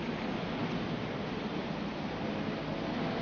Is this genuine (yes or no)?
no